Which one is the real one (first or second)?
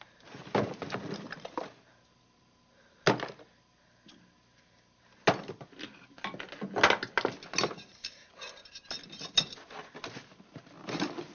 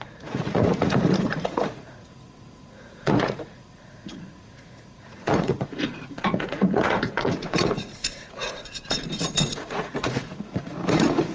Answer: first